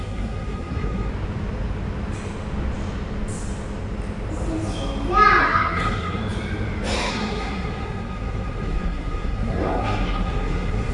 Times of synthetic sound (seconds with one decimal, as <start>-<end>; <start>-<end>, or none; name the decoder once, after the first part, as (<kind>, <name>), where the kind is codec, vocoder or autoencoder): 0.0-1.1 (codec, SNAC); 5.4-6.2; 7.1-10.9